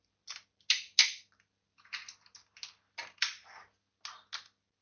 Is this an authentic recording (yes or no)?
yes